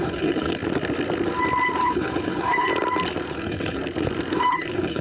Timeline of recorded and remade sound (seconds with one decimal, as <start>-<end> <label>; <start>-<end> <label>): 0.0-0.6 remade; 0.6-1.8 recorded; 1.8-2.7 remade; 2.7-3.3 recorded; 3.3-3.8 remade; 3.8-4.5 recorded; 4.5-5.0 remade